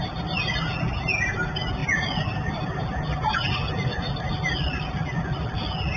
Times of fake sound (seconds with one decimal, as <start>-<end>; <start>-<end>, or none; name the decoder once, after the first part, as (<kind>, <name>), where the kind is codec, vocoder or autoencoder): none